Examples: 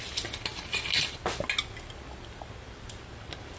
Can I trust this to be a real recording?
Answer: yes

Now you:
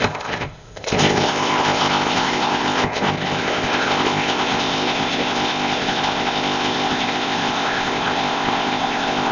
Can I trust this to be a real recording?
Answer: no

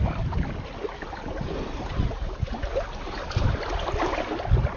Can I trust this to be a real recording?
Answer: yes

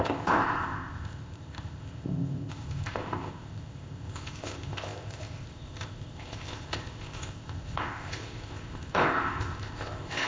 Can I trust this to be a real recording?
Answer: no